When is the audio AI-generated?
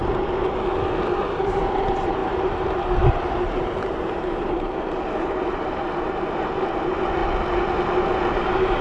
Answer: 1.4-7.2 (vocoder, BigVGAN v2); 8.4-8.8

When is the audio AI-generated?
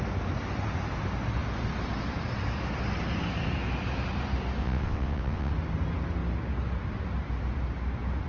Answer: 4.6-5.5 (vocoder, WaveNeXt)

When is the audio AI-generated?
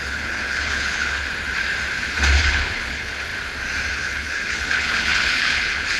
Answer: 0.0-1.3 (codec, HILCodec); 2.4-3.3; 3.9-6.0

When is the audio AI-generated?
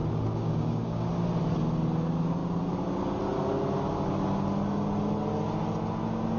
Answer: 0.0-1.1 (codec, DAC)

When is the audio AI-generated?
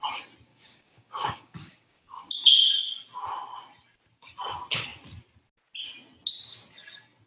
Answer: 0.5-2.3 (codec, DAC)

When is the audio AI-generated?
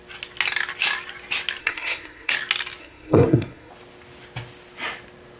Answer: 1.6-2.3 (codec, SNAC); 2.8-3.7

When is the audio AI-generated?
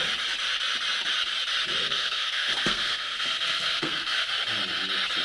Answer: 1.8-4.3 (codec, SNAC)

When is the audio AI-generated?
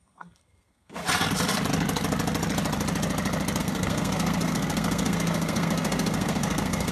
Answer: 0.0-1.0 (codec, SNAC); 3.6-6.9